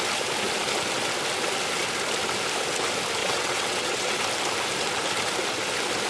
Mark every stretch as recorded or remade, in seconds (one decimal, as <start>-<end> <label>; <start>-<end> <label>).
0.0-3.2 recorded; 3.2-4.2 remade; 4.2-6.1 recorded